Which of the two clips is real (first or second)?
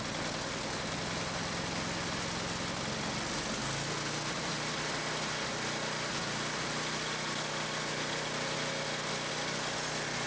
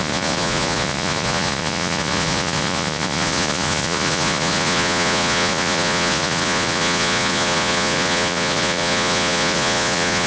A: first